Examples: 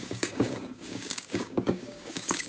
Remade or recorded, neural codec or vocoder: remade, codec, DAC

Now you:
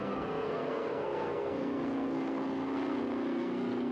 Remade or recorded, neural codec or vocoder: remade, codec, SNAC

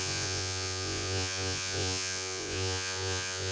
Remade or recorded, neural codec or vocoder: remade, vocoder, Vocos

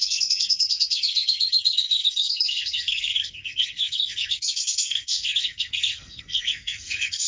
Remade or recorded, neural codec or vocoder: remade, codec, SNAC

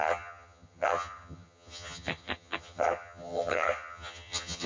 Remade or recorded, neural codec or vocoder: remade, vocoder, HiFi-GAN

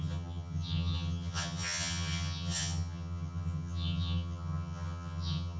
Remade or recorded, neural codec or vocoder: remade, vocoder, HiFi-GAN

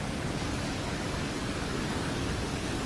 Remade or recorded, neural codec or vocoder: remade, codec, DAC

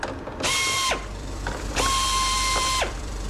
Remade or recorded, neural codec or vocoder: remade, vocoder, BigVGAN v2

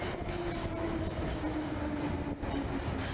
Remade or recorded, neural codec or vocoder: recorded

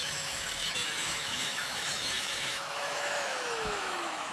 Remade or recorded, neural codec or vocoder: remade, autoencoder, DAC-VAE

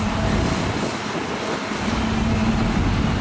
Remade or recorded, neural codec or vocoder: recorded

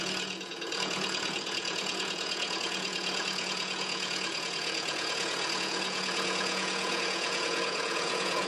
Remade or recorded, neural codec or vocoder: remade, vocoder, Vocos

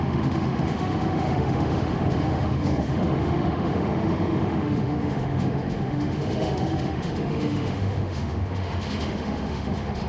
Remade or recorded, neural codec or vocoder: remade, autoencoder, DAC-VAE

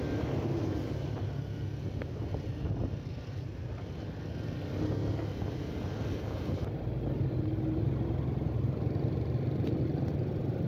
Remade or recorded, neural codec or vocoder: recorded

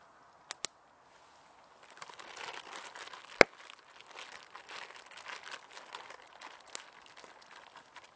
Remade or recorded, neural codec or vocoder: recorded